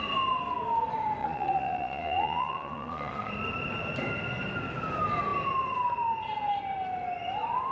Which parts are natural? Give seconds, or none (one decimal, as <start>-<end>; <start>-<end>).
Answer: 0.0-1.2; 3.3-7.7